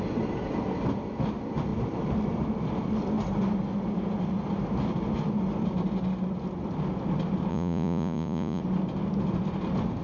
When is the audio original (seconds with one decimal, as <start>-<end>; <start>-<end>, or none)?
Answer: 0.0-7.5; 8.6-10.0